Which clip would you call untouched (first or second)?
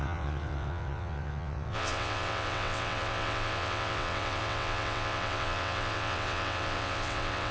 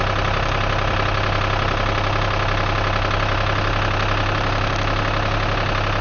second